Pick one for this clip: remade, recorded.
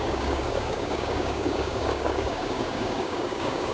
remade